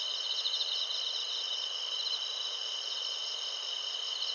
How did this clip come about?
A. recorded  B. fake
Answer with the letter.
A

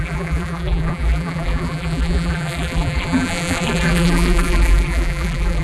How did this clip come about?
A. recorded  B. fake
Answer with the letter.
B